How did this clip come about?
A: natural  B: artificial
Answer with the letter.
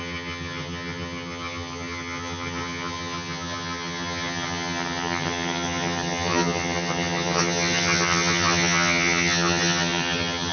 B